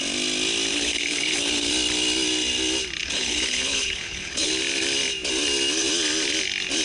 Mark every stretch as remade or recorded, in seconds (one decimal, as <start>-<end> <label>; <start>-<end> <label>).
0.0-0.7 recorded; 0.7-1.7 remade; 1.7-3.0 recorded; 3.0-4.5 remade; 4.5-6.8 recorded